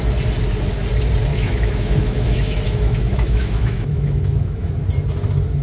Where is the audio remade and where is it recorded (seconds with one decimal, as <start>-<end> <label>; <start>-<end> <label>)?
0.0-1.3 recorded; 1.3-4.7 remade; 4.7-5.6 recorded